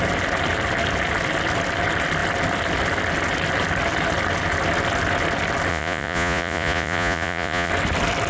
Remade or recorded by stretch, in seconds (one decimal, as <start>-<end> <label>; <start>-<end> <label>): 0.0-5.7 recorded; 5.7-7.7 remade; 7.7-8.3 recorded